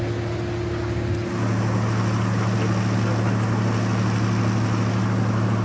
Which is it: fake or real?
real